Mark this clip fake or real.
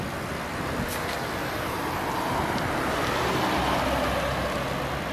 real